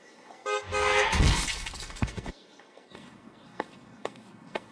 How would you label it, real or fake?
fake